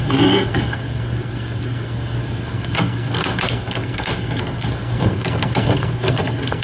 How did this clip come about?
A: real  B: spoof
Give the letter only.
B